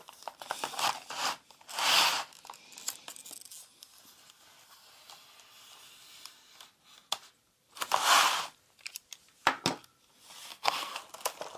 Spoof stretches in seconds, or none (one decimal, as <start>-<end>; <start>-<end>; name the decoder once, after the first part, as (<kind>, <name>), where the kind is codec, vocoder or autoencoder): 10.5-11.0 (codec, SNAC)